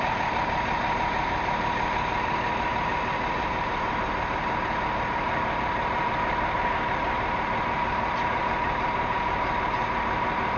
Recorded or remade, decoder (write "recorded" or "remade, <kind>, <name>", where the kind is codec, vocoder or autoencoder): recorded